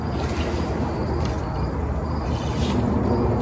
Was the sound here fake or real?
real